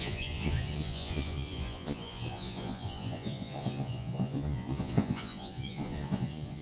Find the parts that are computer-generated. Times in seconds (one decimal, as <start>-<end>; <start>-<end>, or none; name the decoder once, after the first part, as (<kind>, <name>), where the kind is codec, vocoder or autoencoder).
0.0-6.6 (vocoder, Vocos)